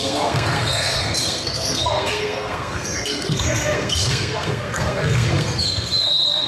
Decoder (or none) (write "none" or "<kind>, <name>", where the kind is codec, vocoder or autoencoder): codec, SNAC